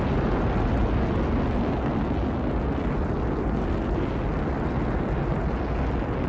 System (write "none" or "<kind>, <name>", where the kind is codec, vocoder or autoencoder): none